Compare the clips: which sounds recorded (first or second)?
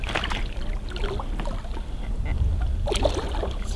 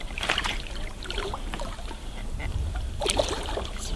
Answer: first